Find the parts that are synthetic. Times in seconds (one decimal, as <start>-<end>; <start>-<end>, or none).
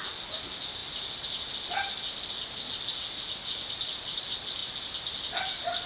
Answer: none